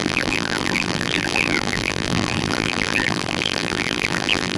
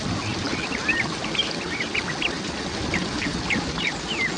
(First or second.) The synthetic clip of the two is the first